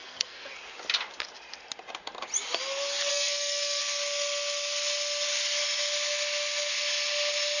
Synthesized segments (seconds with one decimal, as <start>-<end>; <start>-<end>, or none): 0.0-0.6; 3.1-3.8